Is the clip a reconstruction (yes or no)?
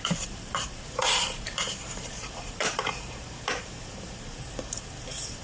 yes